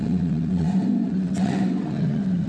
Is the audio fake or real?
fake